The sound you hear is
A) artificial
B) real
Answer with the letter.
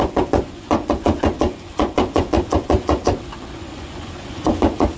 A